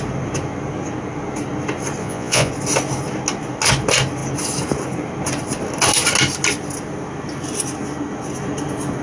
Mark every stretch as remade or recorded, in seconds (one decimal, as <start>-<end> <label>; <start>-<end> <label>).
0.0-2.0 recorded; 2.0-2.5 remade; 2.5-9.0 recorded